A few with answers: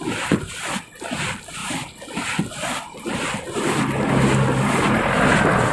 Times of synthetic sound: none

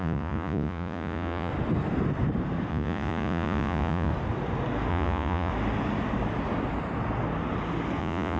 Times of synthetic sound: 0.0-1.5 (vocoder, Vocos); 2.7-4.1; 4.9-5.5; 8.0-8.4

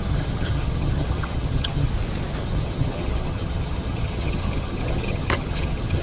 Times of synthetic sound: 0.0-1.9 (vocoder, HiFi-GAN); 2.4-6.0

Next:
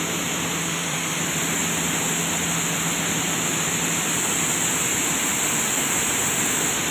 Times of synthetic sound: 0.6-1.2 (autoencoder, DAC-VAE)

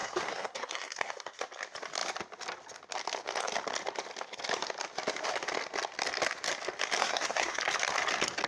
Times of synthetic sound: 0.0-1.4 (codec, SNAC); 7.0-7.6

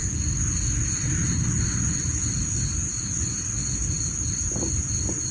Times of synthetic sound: none